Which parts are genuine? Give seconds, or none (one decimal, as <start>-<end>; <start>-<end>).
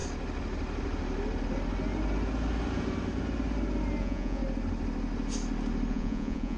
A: 0.0-4.0; 4.4-5.9